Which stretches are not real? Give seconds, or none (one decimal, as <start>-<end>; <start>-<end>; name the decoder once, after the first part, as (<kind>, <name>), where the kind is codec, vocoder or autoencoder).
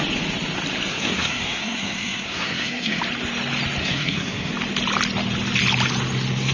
0.9-3.0 (codec, SNAC); 3.8-4.5